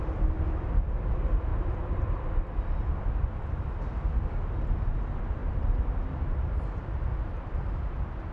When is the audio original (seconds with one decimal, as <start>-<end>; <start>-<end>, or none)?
0.0-5.4; 6.5-8.3

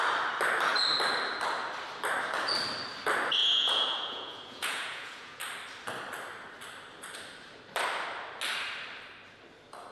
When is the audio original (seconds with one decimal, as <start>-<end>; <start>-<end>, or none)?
0.0-3.4; 5.4-9.9

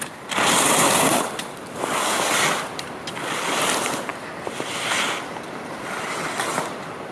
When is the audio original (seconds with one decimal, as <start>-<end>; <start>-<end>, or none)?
0.0-7.1